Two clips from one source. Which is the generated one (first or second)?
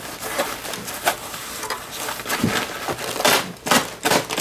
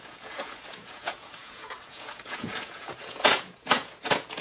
second